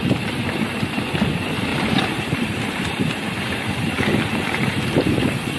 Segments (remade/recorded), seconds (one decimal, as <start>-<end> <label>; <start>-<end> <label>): 0.0-1.7 recorded; 1.7-5.1 remade; 5.1-5.6 recorded